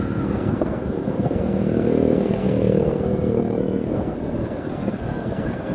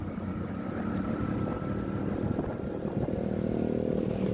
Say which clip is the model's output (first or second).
first